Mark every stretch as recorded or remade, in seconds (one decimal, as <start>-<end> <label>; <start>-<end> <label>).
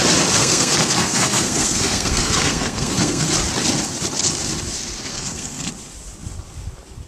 0.0-0.4 recorded; 0.4-3.3 remade; 3.3-5.1 recorded; 5.1-5.7 remade; 5.7-7.1 recorded